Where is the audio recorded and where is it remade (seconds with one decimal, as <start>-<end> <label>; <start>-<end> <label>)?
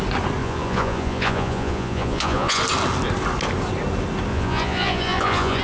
0.0-0.4 recorded; 0.4-2.6 remade; 2.6-4.3 recorded; 4.3-5.6 remade